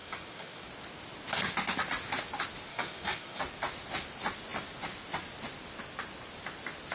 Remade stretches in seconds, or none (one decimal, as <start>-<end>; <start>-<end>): 0.0-0.7; 2.7-3.4